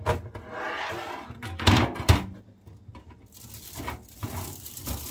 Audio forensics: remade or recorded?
recorded